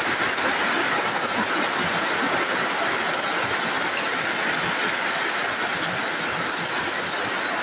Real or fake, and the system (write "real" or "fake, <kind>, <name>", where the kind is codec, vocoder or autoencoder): real